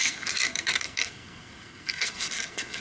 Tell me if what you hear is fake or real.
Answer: fake